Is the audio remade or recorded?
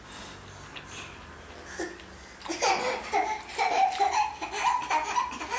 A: recorded